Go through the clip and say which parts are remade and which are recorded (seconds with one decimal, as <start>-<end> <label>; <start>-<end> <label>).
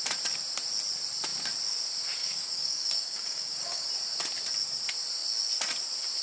0.0-2.2 recorded; 2.2-3.9 remade; 3.9-6.2 recorded